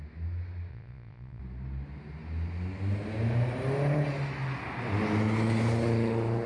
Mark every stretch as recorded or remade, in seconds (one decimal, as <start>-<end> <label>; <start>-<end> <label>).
0.0-0.7 recorded; 0.7-1.4 remade; 1.4-6.5 recorded